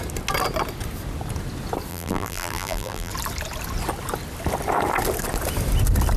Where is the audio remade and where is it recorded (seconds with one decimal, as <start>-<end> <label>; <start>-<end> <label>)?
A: 0.0-1.9 recorded; 1.9-3.1 remade; 3.1-6.2 recorded